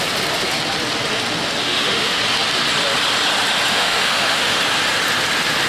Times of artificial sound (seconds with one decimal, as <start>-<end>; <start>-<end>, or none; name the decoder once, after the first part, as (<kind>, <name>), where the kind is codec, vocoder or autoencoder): 1.6-2.2 (autoencoder, DAC-VAE); 3.7-4.6